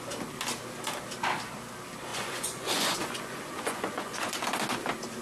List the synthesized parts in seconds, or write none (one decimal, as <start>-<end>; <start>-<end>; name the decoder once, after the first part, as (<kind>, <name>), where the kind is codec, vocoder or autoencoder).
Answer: 2.1-4.3 (vocoder, Vocos)